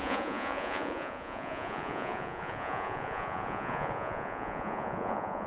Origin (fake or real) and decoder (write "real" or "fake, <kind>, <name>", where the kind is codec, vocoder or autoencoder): fake, vocoder, Vocos